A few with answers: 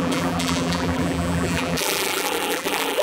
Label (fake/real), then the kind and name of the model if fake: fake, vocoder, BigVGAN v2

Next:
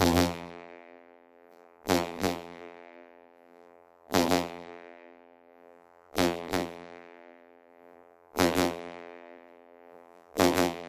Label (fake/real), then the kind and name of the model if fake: fake, vocoder, BigVGAN v2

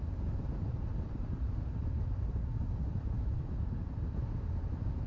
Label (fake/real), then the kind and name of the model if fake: fake, vocoder, BigVGAN v2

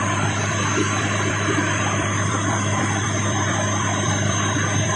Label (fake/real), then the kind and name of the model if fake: fake, vocoder, BigVGAN v2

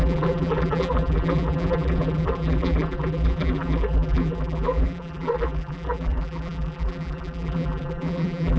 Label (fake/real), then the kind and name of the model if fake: fake, vocoder, BigVGAN v2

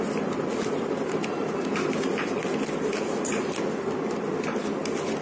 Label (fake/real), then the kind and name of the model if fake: real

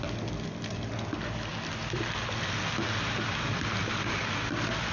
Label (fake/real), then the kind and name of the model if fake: real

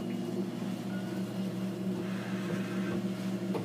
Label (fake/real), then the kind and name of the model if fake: real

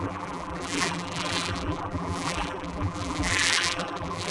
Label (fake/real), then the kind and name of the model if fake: fake, vocoder, BigVGAN v2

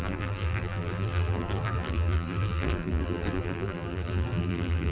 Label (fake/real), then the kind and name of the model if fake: fake, vocoder, BigVGAN v2